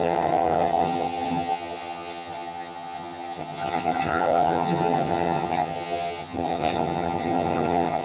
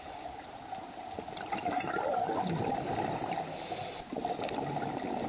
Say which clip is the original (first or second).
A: second